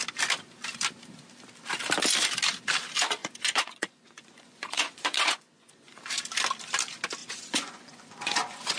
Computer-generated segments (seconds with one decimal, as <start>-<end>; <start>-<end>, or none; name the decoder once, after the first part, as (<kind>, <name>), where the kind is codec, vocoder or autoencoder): 3.2-6.0 (vocoder, Vocos); 7.2-8.8